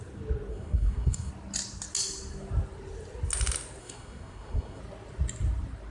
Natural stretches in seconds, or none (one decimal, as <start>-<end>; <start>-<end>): 0.0-0.5; 1.3-3.8; 4.8-5.9